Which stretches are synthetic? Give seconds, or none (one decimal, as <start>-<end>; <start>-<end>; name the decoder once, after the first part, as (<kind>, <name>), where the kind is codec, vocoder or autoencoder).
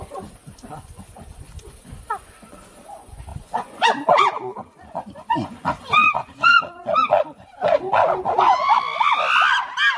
0.0-8.7 (vocoder, Vocos)